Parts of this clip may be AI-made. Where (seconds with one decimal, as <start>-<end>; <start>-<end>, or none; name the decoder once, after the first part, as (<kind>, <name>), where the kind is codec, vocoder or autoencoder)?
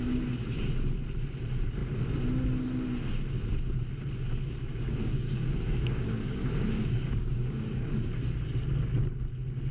4.7-8.1 (codec, DAC)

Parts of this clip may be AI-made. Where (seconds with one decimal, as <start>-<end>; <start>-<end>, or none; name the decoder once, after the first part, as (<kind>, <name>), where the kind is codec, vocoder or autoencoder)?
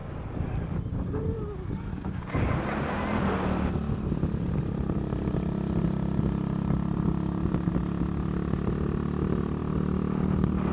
1.9-2.5 (codec, DAC)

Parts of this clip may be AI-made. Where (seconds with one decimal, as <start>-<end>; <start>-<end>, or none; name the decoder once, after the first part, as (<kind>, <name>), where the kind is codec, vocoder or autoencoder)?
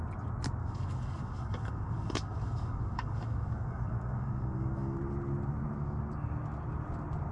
0.6-5.0 (codec, DAC)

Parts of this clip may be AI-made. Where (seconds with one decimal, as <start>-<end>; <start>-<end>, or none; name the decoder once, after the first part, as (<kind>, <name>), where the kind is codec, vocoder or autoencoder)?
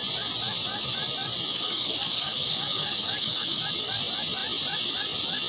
1.5-3.6 (codec, DAC)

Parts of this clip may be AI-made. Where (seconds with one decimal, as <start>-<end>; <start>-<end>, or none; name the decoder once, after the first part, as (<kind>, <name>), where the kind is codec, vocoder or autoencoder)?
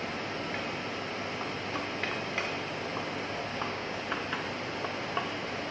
3.5-4.0 (codec, DAC)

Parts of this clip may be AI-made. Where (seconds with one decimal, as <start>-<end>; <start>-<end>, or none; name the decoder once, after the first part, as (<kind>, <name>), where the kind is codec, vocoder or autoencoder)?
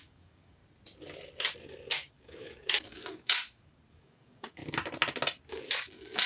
0.0-0.6 (codec, DAC); 1.9-3.4; 3.9-4.6; 5.5-6.3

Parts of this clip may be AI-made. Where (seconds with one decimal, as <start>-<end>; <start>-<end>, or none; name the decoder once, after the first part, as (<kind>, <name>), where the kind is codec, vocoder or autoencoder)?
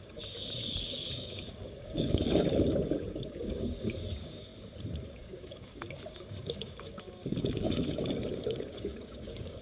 0.0-4.5 (codec, DAC); 5.1-9.6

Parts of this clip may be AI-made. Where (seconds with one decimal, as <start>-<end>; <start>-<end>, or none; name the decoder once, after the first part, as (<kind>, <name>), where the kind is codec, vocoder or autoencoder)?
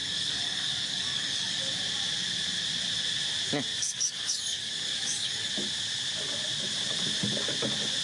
0.0-1.6 (codec, DAC); 3.7-5.5